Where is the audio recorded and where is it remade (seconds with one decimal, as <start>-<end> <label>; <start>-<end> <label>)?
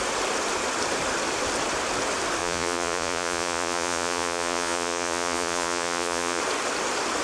0.0-2.4 recorded; 2.4-6.4 remade; 6.4-7.2 recorded